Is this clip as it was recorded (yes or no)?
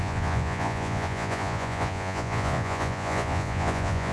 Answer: no